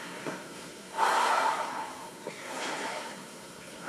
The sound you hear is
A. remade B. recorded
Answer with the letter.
A